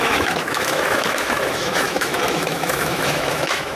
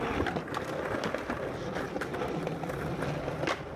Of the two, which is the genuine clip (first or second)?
second